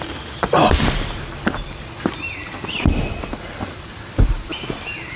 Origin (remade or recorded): recorded